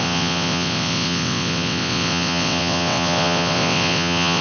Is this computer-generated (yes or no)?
yes